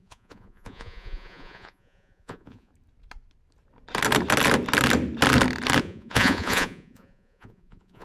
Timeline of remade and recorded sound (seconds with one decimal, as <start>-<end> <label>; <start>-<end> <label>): 0.0-2.7 remade; 2.7-5.8 recorded; 5.8-8.0 remade